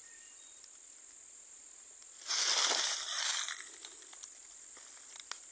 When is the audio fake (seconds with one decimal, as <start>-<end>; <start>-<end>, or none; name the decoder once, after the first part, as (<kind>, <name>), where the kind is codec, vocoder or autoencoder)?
none